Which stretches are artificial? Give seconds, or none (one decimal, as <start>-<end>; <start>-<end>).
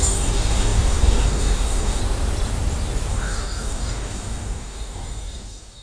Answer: 0.0-2.0; 3.1-5.8